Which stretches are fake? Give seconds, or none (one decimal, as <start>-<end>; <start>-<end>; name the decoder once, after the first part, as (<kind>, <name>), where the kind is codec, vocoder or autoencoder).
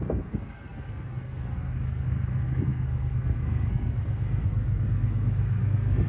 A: 0.0-6.1 (codec, SNAC)